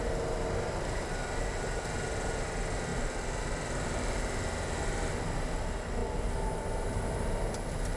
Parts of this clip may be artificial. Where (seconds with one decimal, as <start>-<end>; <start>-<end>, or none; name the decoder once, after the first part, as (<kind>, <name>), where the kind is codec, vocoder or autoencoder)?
none